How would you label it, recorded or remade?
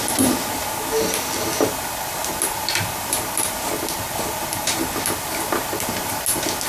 recorded